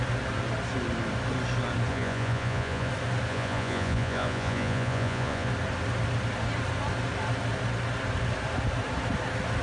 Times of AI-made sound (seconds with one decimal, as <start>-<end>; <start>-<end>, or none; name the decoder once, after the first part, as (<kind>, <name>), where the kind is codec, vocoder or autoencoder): 1.9-2.9 (vocoder, Vocos); 3.3-5.5